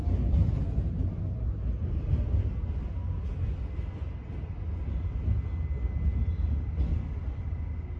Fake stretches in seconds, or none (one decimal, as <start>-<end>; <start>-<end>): none